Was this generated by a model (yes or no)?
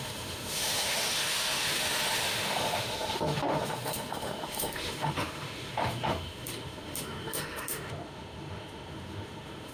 yes